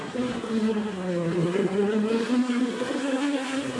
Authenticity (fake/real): fake